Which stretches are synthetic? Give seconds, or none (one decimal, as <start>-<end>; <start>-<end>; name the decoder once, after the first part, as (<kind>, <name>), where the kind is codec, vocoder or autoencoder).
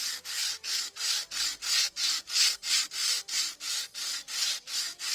none